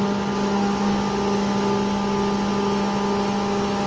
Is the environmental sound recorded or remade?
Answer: recorded